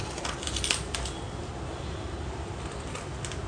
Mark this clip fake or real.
real